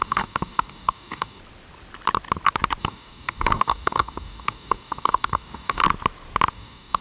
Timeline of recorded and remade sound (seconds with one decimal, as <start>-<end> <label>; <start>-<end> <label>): 0.0-1.4 remade; 1.4-2.8 recorded; 2.8-5.8 remade; 5.8-6.5 recorded; 6.5-7.0 remade